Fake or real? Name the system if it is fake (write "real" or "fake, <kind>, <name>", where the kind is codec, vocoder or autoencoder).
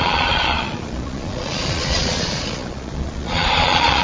fake, vocoder, Vocos